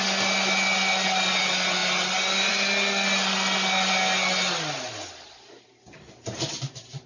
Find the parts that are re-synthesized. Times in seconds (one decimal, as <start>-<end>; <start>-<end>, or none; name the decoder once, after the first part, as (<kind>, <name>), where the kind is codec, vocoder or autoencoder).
none